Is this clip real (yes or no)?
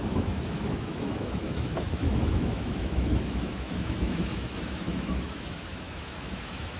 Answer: no